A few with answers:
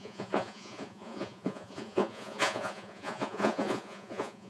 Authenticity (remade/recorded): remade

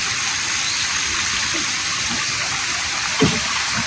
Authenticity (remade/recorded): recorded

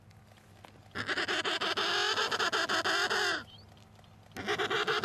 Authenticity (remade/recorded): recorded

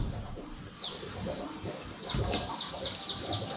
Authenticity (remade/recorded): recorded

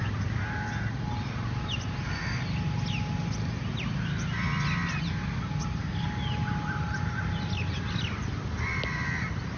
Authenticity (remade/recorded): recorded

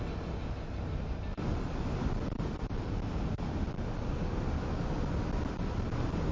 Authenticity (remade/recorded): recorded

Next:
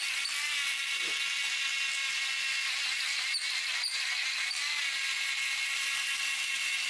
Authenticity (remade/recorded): recorded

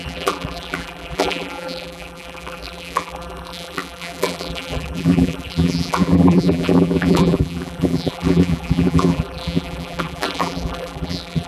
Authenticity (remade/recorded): remade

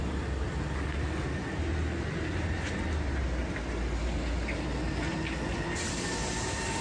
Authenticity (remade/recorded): recorded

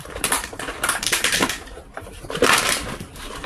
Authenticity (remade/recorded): remade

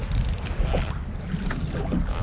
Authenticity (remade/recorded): recorded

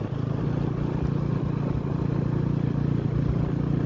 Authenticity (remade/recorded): recorded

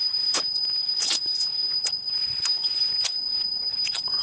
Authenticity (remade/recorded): remade